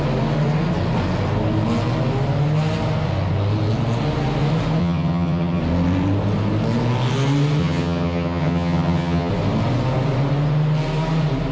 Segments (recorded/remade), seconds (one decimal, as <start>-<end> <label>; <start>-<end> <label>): 0.0-4.8 recorded; 4.8-5.6 remade; 5.6-7.6 recorded; 7.6-9.3 remade; 9.3-11.5 recorded